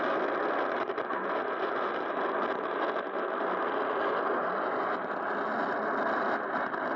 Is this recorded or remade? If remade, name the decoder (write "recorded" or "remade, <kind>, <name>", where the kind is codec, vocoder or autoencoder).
recorded